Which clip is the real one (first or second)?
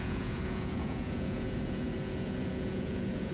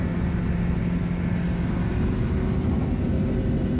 second